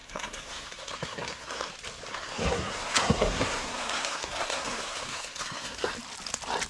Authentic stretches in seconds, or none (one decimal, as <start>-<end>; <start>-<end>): 1.7-2.1; 5.9-6.7